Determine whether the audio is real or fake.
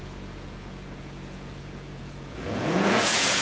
fake